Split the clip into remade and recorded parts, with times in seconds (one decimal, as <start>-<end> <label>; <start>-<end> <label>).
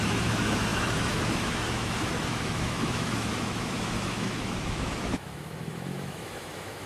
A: 0.0-6.9 remade